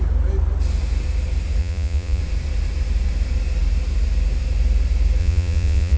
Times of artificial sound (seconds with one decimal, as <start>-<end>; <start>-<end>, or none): 1.6-2.2; 5.2-6.0